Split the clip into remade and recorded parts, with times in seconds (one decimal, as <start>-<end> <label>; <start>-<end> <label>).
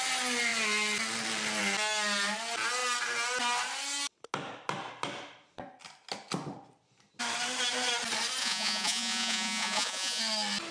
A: 0.0-8.4 recorded; 8.4-10.2 remade; 10.2-10.7 recorded